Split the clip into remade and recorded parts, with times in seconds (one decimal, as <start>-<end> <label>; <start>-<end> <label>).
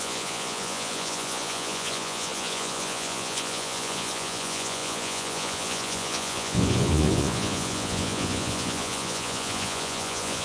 0.0-10.4 remade